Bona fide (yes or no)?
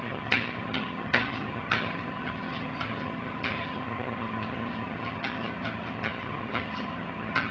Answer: no